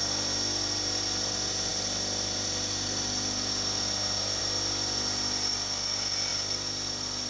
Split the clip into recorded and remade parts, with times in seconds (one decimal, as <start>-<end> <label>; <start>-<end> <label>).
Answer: 0.0-7.3 recorded